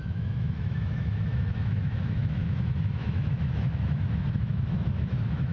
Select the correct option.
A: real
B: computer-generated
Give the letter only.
B